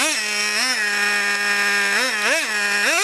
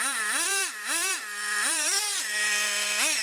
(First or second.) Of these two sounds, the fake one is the second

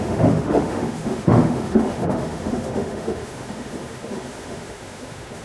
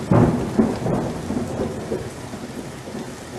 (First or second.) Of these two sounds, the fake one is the first